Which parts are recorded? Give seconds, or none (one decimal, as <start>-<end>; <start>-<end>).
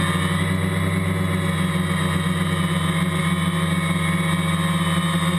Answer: 0.0-5.4